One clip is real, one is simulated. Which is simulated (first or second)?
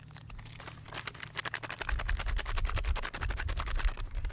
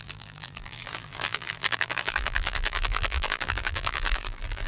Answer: second